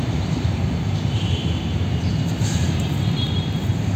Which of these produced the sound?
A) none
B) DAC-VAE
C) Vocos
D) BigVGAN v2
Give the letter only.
D